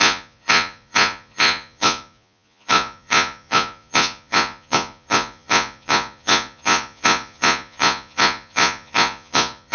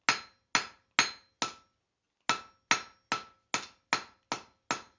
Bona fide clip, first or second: second